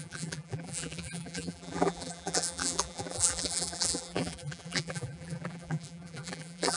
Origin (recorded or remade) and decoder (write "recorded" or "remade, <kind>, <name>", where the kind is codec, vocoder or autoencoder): remade, vocoder, BigVGAN v2